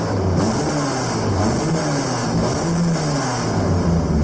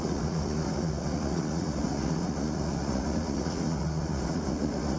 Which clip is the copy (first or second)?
second